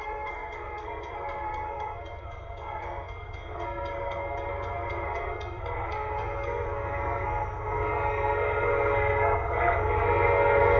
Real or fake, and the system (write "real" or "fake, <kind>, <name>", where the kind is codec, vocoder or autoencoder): fake, codec, SNAC